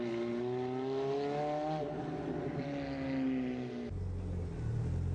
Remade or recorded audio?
recorded